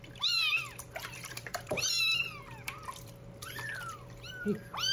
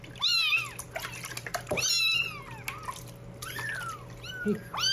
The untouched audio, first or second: second